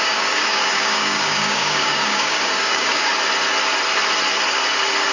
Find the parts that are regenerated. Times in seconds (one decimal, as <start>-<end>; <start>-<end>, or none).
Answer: 0.0-3.1